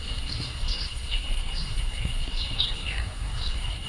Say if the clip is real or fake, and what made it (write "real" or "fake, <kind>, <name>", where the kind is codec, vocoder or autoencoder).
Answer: fake, codec, SNAC